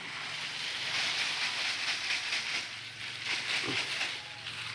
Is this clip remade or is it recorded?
recorded